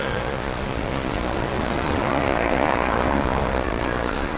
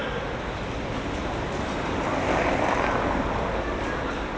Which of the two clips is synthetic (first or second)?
first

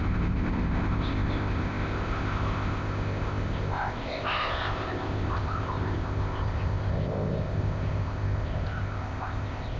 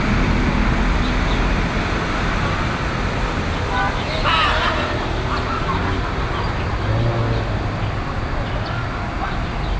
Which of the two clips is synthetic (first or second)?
first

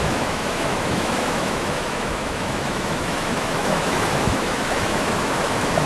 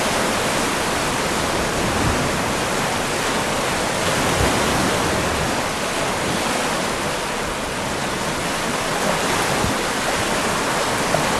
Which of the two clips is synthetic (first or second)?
first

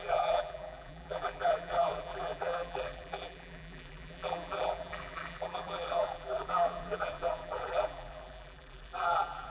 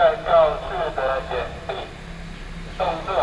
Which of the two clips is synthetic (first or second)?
first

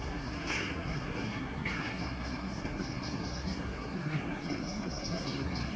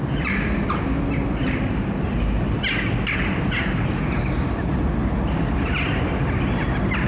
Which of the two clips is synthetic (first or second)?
first